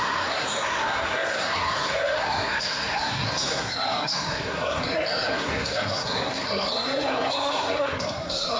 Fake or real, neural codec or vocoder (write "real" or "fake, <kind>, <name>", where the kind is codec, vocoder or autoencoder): fake, codec, SNAC